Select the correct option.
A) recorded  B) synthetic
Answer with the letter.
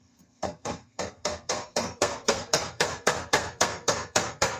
B